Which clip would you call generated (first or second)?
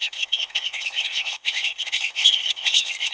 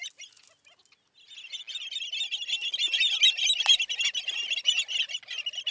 first